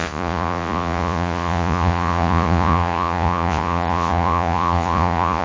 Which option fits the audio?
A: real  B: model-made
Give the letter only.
B